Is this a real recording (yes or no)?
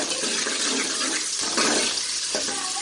yes